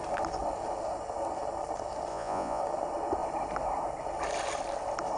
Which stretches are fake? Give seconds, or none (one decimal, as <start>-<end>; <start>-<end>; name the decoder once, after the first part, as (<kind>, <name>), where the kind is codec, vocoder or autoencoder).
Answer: 2.1-2.6 (vocoder, Vocos)